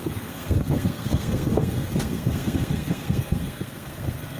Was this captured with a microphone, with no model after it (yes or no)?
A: no